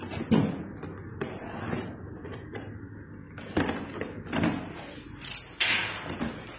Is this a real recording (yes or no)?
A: yes